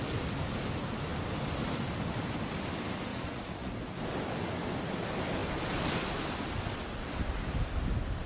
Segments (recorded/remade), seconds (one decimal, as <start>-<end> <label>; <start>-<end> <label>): 0.0-3.1 recorded; 3.1-3.7 remade; 3.7-8.3 recorded